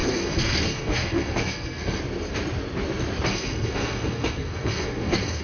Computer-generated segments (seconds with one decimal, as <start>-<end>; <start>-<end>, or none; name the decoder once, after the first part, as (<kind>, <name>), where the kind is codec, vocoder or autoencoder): 0.0-2.0 (codec, SNAC); 3.3-5.4